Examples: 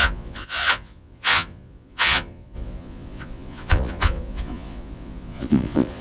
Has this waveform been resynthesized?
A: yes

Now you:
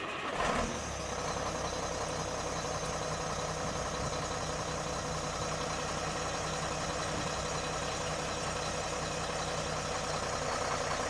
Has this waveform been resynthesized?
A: no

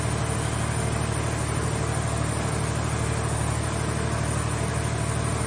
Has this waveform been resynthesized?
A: no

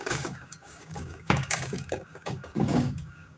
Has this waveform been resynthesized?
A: yes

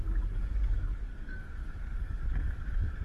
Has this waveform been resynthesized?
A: yes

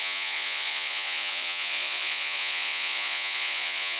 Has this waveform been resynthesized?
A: yes